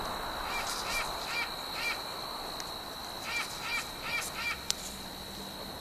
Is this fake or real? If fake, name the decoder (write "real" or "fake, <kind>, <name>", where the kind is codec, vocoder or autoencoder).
real